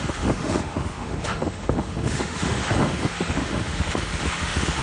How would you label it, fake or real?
fake